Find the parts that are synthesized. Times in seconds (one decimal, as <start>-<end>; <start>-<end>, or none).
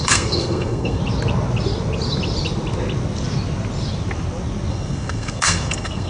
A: 0.0-1.0; 4.7-6.1